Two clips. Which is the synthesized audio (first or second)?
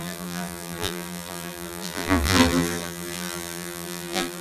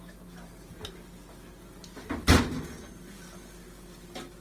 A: first